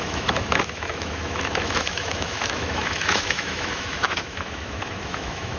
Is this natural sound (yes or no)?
no